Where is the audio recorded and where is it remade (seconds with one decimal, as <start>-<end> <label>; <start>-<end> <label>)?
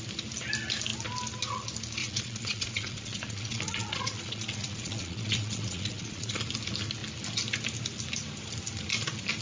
0.0-2.0 recorded; 2.0-6.4 remade; 6.4-9.4 recorded